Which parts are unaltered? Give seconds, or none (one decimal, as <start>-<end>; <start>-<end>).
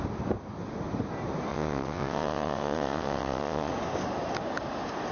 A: 0.0-1.5; 3.7-5.1